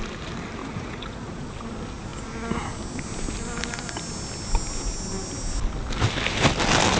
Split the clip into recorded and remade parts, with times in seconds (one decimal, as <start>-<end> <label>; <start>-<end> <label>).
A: 0.0-0.6 recorded; 0.6-1.5 remade; 1.5-7.0 recorded